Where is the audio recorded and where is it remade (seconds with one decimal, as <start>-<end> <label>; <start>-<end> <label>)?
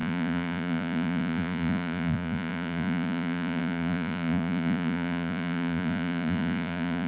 0.0-7.1 remade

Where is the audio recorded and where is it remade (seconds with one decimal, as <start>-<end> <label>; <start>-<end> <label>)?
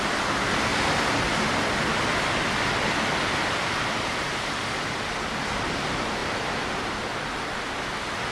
0.0-8.3 recorded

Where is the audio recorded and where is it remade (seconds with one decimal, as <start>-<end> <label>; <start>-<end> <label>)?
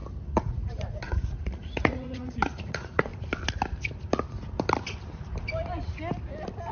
0.0-0.5 recorded; 0.5-3.1 remade; 3.1-6.7 recorded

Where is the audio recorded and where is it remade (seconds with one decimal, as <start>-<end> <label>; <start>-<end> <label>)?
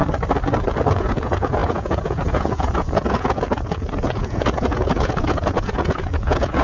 0.0-0.9 recorded; 0.9-6.6 remade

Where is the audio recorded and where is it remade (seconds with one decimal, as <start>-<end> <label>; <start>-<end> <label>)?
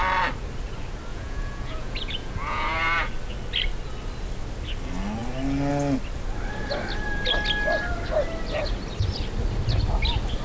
0.0-1.1 recorded; 1.1-3.1 remade; 3.1-10.4 recorded